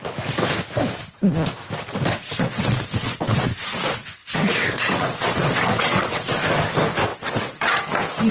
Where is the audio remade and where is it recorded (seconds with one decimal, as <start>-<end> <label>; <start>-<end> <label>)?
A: 0.0-2.3 recorded; 2.3-3.8 remade; 3.8-4.2 recorded; 4.2-6.4 remade; 6.4-7.1 recorded; 7.1-7.8 remade; 7.8-8.3 recorded